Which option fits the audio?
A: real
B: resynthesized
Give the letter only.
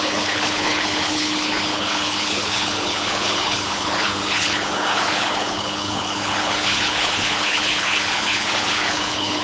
B